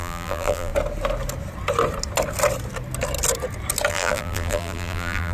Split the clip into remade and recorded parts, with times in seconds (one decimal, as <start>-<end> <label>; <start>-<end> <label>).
0.0-0.7 remade; 0.7-3.9 recorded; 3.9-5.3 remade